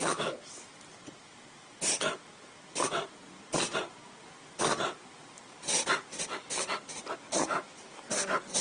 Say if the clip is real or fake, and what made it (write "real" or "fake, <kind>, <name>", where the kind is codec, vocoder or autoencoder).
real